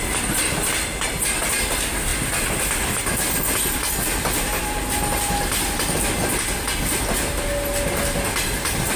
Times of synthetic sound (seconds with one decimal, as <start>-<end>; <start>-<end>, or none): none